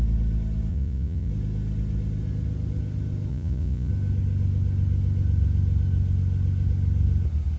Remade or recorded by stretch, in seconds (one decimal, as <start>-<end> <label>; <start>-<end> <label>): 0.0-0.7 recorded; 0.7-1.3 remade; 1.3-3.3 recorded; 3.3-3.9 remade; 3.9-7.6 recorded